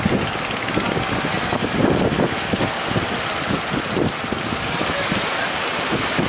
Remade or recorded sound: recorded